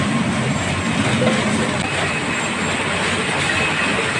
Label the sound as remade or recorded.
recorded